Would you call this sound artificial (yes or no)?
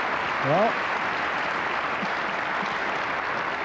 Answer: no